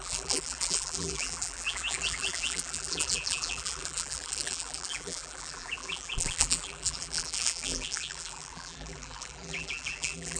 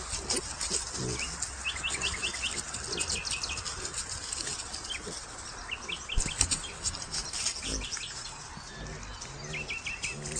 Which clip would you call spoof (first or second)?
first